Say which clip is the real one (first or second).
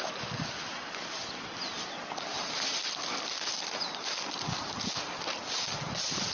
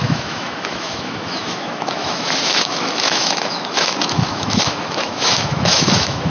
first